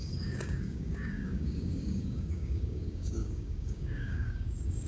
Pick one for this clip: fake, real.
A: fake